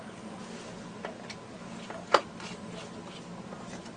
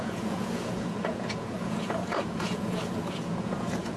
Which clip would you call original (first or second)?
first